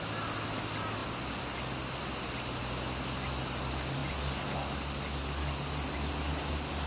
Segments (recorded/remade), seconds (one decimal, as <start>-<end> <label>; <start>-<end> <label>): 0.0-6.9 recorded